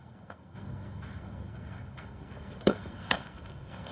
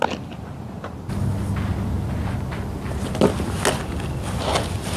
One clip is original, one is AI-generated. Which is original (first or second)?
second